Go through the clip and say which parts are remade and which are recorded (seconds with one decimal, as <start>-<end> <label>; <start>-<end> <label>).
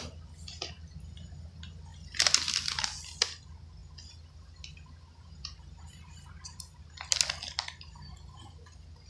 0.0-9.1 recorded